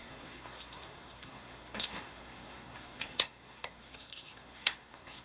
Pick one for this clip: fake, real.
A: fake